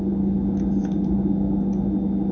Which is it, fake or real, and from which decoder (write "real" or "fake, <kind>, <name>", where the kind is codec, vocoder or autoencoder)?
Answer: real